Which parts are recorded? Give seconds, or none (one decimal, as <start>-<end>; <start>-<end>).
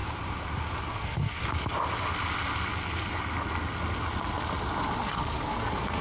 0.0-0.9; 1.4-5.0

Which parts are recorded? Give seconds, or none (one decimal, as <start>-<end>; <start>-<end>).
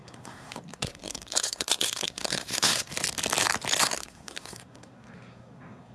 2.9-3.8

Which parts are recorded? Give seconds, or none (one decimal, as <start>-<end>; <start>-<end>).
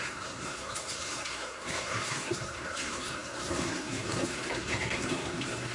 none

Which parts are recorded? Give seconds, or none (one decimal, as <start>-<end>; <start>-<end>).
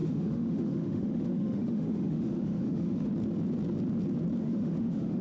3.1-4.4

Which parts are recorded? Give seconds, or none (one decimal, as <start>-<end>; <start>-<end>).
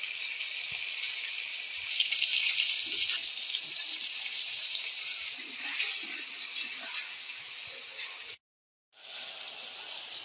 0.0-1.5; 5.8-10.2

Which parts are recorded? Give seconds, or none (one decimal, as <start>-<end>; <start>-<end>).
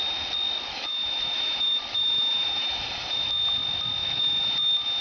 0.0-0.7; 3.2-4.0; 4.5-5.0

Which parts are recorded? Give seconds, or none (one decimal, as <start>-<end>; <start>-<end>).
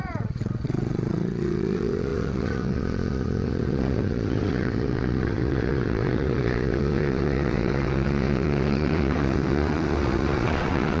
none